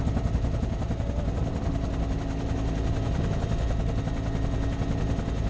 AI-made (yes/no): no